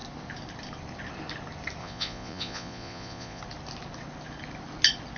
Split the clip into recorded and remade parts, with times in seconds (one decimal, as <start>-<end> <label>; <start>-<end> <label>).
0.0-1.8 recorded; 1.8-3.4 remade; 3.4-5.2 recorded